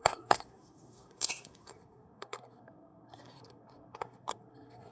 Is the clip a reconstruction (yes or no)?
yes